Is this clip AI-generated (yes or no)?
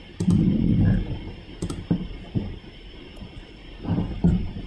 yes